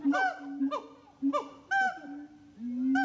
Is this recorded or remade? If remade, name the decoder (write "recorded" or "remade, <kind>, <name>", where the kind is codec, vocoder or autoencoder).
recorded